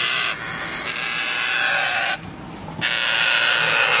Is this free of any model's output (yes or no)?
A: yes